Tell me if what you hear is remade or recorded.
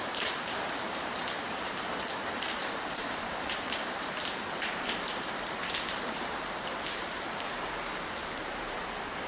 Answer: remade